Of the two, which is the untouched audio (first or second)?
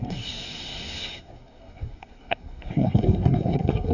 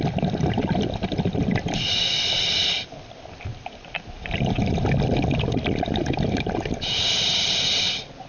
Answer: second